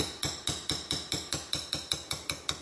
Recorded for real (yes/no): yes